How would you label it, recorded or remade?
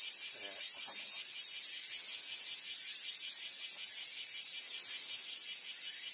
recorded